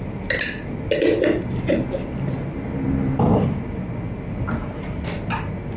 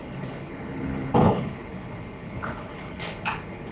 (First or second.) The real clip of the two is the first